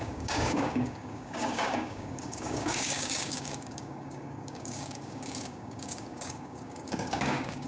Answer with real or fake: fake